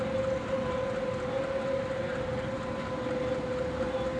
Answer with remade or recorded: recorded